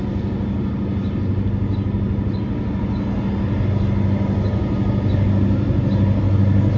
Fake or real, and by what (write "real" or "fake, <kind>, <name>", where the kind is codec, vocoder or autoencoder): real